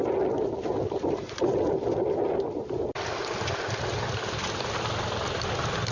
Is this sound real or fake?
real